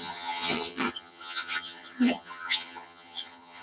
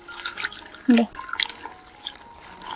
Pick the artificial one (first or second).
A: first